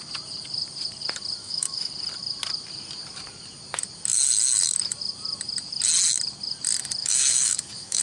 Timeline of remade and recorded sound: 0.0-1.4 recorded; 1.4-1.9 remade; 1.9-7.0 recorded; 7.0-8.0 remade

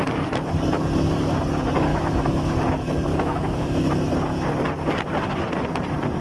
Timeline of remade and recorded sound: 0.0-1.9 recorded; 1.9-2.5 remade; 2.5-3.1 recorded; 3.1-3.8 remade; 3.8-6.2 recorded

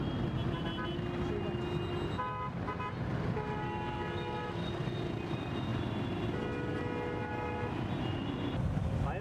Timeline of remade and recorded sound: 0.0-9.2 recorded